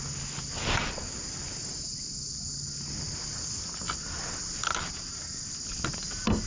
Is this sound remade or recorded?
recorded